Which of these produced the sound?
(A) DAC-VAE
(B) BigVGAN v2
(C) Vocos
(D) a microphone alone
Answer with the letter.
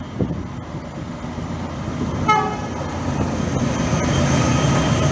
D